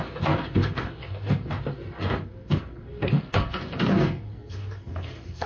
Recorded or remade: remade